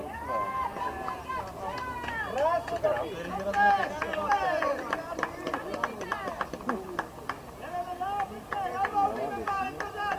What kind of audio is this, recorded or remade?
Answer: recorded